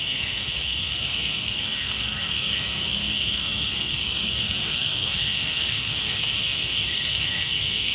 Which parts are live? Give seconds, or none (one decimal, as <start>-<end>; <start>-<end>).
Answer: none